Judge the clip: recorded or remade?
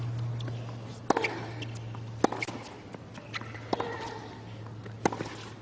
recorded